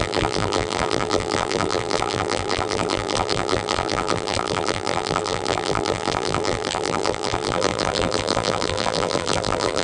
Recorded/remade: remade